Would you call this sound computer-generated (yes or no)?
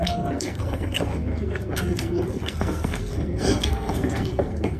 yes